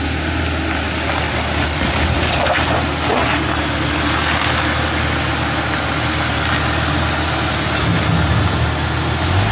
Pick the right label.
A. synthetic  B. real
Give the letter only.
B